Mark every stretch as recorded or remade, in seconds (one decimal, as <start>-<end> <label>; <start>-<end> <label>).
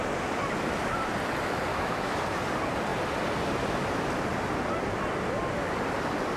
0.0-1.7 recorded; 1.7-2.2 remade; 2.2-6.4 recorded